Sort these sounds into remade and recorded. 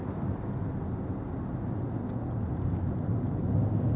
recorded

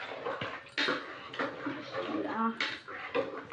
recorded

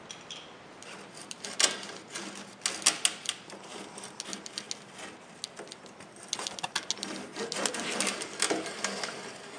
recorded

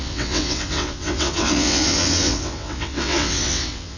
remade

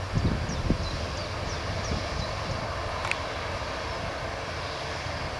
recorded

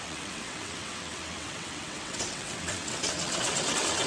remade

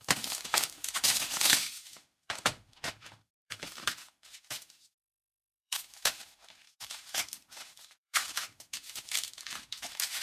remade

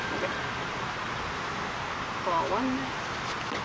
recorded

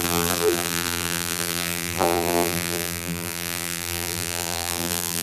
remade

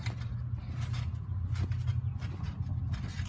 recorded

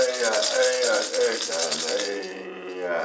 recorded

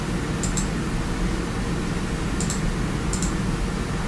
recorded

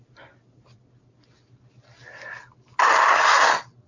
recorded